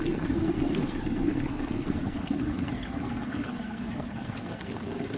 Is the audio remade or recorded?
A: remade